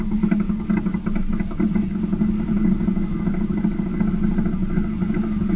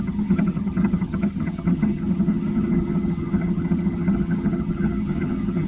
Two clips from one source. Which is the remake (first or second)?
second